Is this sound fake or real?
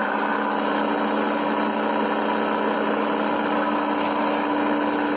real